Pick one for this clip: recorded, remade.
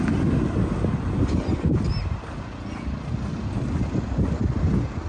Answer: recorded